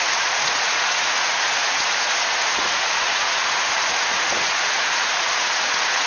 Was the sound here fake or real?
fake